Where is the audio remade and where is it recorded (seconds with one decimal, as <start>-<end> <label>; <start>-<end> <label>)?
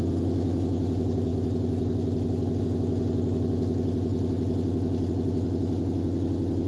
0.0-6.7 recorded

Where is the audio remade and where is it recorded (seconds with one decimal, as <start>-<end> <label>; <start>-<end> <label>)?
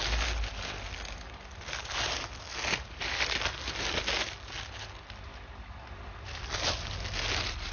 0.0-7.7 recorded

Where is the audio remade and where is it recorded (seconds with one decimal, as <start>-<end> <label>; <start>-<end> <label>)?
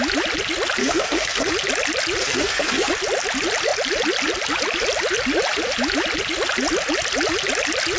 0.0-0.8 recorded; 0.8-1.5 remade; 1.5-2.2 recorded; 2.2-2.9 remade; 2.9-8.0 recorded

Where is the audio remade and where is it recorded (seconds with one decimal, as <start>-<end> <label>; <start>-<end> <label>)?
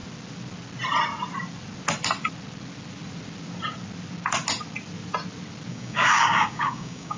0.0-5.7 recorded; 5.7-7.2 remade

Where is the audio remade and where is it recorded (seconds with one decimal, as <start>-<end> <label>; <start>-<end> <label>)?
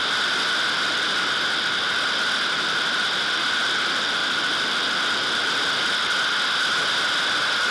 0.0-7.7 recorded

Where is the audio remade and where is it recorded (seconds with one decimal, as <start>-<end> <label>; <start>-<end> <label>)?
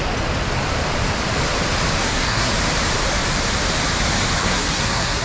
0.0-2.0 recorded; 2.0-2.5 remade; 2.5-4.4 recorded; 4.4-5.2 remade